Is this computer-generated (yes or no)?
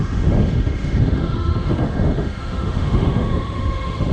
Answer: yes